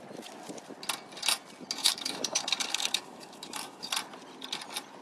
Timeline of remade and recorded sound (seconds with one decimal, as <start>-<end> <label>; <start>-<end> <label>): 0.0-1.8 recorded; 1.8-3.9 remade; 3.9-5.0 recorded